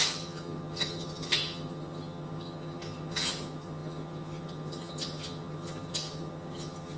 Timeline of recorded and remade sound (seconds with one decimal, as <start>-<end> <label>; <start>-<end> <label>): 0.0-7.0 remade